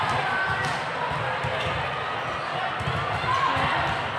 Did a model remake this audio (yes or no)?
no